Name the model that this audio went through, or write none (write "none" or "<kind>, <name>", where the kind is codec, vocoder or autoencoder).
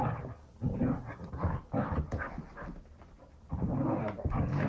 none